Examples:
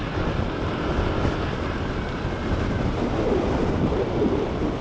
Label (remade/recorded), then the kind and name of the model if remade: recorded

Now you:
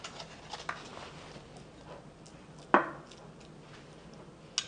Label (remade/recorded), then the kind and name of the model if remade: recorded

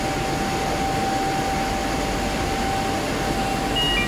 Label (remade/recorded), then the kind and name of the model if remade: recorded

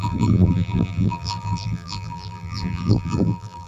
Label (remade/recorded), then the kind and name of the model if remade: remade, vocoder, BigVGAN v2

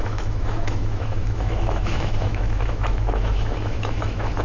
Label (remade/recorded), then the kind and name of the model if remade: remade, autoencoder, DAC-VAE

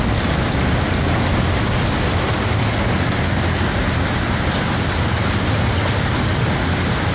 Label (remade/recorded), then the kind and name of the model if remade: recorded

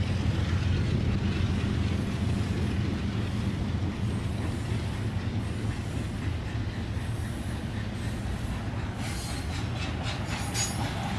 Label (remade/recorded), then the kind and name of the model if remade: recorded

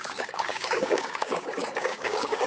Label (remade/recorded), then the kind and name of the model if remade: remade, codec, DAC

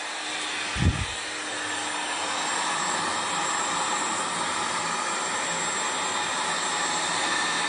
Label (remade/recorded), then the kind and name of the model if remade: recorded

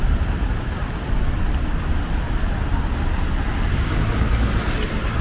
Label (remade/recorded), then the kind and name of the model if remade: recorded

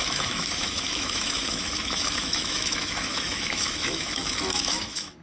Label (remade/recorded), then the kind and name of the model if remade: remade, autoencoder, DAC-VAE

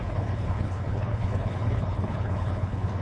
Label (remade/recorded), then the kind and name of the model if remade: remade, codec, HILCodec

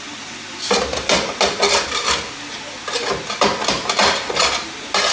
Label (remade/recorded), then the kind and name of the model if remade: recorded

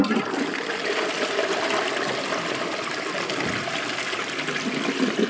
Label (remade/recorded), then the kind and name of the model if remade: recorded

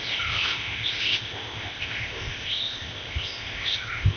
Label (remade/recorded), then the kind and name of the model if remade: remade, codec, ZipCodec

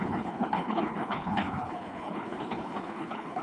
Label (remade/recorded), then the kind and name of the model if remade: remade, codec, HILCodec